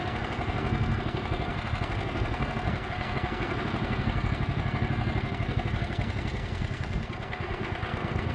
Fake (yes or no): yes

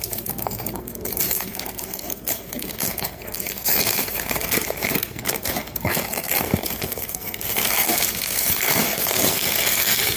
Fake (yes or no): yes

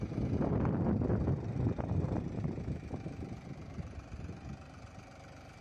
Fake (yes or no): no